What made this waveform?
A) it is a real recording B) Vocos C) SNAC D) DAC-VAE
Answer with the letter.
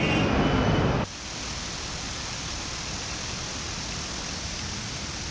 A